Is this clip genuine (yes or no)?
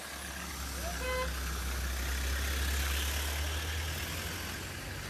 yes